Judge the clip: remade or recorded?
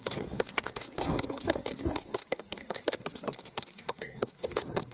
remade